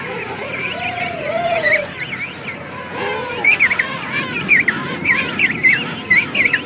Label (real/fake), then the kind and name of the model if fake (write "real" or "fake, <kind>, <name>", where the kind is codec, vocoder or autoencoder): real